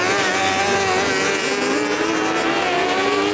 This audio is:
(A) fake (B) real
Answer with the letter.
B